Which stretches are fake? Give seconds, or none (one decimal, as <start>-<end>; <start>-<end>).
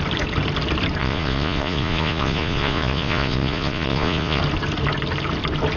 1.0-4.4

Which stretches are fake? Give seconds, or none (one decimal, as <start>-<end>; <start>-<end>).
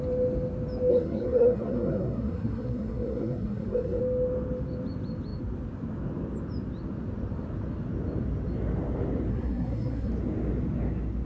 0.9-4.0; 9.3-10.1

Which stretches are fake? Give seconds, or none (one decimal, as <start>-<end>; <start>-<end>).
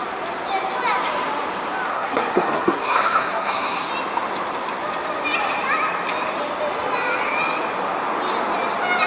1.9-3.9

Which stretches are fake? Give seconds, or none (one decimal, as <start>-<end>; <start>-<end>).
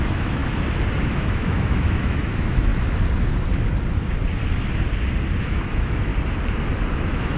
0.0-0.4; 1.0-2.7; 5.4-6.1; 6.9-7.4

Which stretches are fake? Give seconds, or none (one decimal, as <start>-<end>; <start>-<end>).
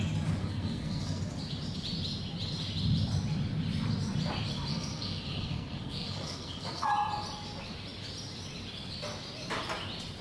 0.4-1.2; 4.7-6.9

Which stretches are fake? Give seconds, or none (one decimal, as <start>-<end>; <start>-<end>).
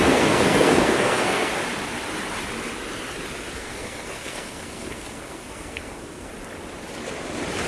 0.0-1.5; 3.5-6.3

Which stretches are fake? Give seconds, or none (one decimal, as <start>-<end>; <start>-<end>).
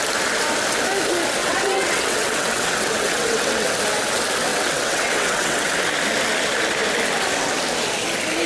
1.4-3.7; 4.5-5.7